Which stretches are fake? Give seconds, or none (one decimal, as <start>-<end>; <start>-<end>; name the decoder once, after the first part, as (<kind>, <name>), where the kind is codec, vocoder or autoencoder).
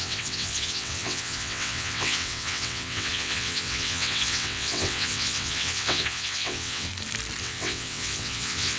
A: 0.0-6.9 (vocoder, WaveNeXt); 7.4-8.8